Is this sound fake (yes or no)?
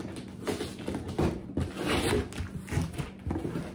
no